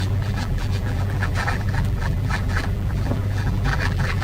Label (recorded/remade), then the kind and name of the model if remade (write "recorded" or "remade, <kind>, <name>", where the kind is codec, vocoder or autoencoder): remade, vocoder, BigVGAN v2